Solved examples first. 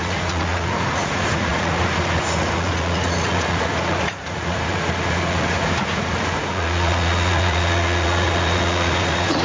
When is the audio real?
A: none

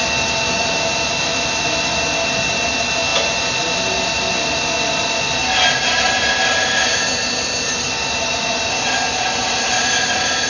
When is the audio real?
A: 0.0-10.5